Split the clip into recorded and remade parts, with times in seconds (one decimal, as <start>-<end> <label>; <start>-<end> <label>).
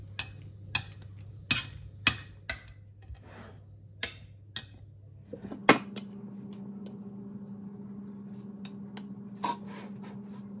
0.0-10.6 recorded